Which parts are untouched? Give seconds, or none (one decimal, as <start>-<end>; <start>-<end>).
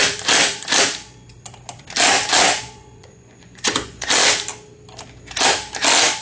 0.0-2.4; 4.1-6.2